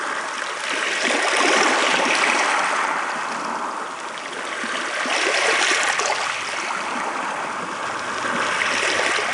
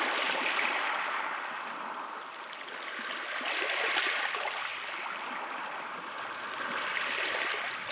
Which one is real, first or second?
first